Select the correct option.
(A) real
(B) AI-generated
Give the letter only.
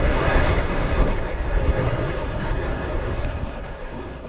B